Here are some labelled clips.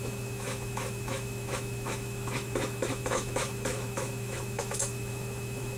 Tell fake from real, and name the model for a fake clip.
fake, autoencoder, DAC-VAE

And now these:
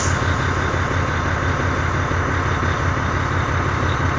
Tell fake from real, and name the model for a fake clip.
real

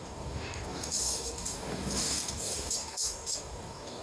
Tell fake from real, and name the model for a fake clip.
fake, codec, DAC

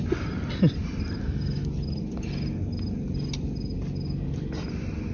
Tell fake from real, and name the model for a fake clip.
real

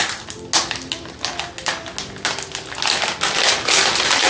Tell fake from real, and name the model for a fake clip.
real